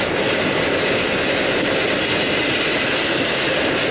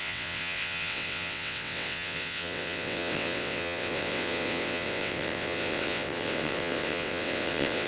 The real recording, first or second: first